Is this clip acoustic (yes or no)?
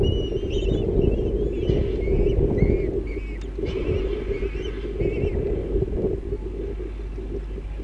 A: yes